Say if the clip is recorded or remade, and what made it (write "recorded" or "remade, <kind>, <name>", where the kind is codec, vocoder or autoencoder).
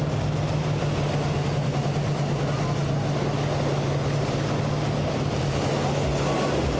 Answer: recorded